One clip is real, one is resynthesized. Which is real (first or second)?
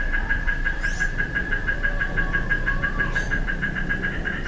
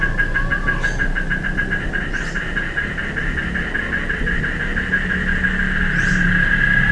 second